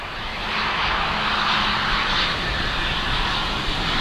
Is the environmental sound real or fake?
real